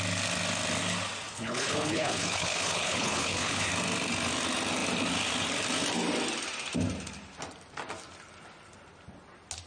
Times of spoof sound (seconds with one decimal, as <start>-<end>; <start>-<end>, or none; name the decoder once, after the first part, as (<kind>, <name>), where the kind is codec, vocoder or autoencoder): 1.3-3.7 (codec, HILCodec)